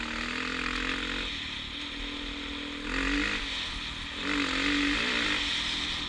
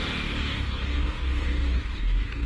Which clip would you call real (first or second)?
first